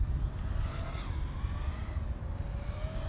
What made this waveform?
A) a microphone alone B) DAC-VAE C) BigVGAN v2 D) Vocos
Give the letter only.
A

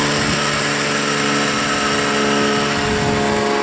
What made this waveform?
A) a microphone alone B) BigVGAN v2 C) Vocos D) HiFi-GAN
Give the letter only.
A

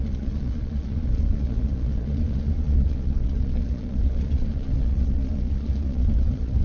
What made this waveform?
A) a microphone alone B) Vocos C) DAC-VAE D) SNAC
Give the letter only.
B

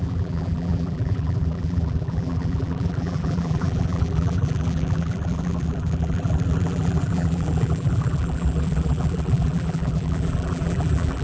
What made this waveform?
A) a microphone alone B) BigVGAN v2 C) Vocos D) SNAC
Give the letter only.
B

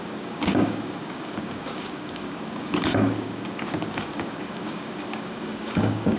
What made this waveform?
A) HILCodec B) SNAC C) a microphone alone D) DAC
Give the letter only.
D